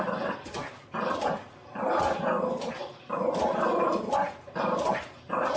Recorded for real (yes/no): yes